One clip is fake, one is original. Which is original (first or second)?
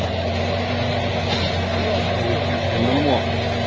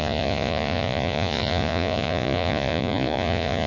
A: first